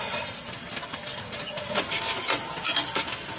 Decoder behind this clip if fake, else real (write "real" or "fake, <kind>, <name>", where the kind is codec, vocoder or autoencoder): real